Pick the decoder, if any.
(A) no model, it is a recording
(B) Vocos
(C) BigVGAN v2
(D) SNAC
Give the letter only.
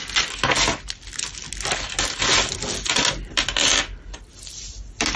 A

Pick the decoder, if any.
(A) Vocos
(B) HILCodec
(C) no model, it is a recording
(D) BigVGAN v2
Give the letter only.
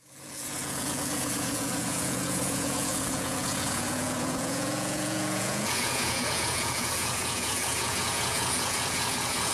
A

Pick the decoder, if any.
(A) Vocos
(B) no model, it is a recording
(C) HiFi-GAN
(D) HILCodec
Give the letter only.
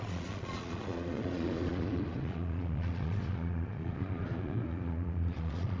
A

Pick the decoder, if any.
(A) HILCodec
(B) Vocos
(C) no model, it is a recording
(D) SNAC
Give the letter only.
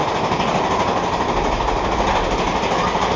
C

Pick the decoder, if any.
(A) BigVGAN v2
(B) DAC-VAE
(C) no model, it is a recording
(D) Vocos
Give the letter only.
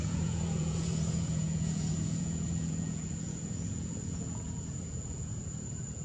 D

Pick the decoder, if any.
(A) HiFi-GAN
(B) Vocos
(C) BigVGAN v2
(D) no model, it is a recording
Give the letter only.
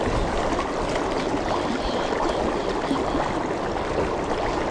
D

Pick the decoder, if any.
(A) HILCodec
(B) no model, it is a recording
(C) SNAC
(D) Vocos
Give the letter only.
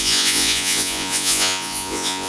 D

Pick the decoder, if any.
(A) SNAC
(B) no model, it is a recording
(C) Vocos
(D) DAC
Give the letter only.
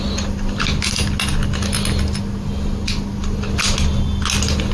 B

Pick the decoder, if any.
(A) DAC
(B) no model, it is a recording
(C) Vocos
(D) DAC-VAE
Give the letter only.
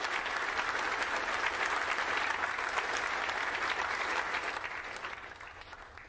B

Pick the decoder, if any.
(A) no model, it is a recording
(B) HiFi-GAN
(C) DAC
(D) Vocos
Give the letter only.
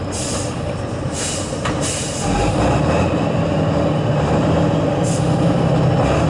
A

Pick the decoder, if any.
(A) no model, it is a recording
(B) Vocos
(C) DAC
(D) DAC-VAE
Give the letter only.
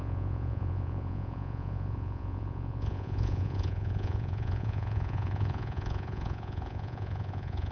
B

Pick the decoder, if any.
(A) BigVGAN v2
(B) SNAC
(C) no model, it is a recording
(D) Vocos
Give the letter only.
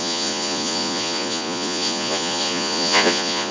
D